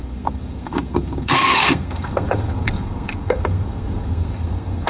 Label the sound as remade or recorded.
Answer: remade